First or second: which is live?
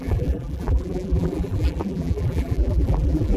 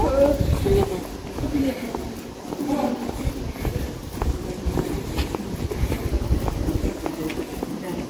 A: second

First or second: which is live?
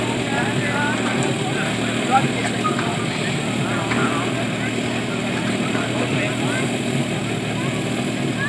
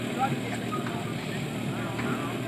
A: second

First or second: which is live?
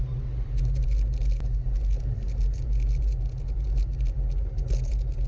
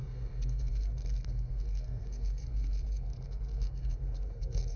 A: first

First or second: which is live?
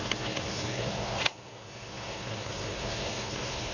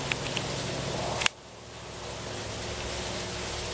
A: second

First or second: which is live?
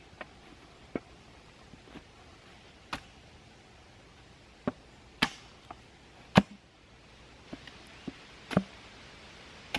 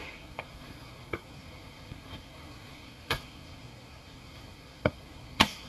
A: first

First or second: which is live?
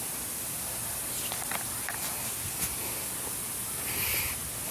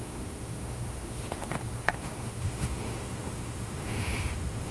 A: first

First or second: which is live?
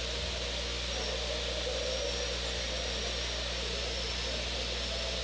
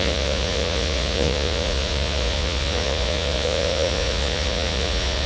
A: first